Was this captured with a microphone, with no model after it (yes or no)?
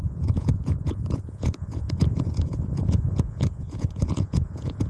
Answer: no